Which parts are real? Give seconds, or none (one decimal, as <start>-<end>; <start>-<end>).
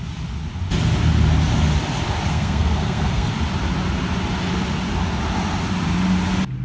0.0-2.3; 3.3-6.6